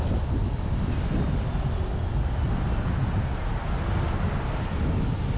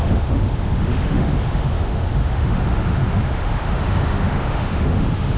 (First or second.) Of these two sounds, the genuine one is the first